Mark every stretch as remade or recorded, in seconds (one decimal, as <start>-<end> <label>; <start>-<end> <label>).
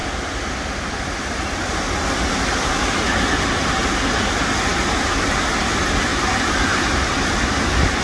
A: 0.0-8.0 recorded